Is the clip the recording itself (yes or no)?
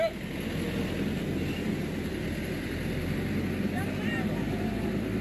yes